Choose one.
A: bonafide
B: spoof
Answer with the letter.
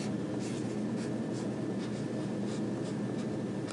A